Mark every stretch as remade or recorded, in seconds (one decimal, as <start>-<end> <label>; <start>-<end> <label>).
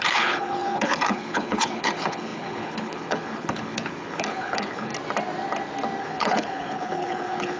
0.0-4.9 remade; 4.9-6.0 recorded; 6.0-7.6 remade